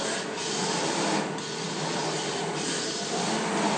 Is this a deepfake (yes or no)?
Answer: no